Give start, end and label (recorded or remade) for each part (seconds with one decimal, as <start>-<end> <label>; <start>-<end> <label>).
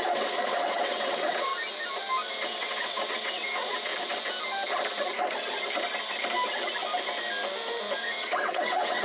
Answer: 0.0-1.5 remade; 1.5-2.3 recorded; 2.3-3.9 remade; 3.9-8.0 recorded; 8.0-9.0 remade